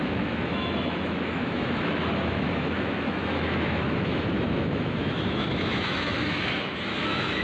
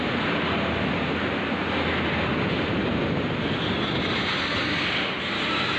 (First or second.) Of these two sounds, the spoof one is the first